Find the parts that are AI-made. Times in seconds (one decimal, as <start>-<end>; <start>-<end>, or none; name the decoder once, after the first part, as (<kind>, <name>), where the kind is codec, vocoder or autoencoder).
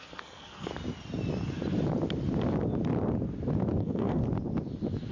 0.0-0.7 (codec, SNAC); 3.8-4.2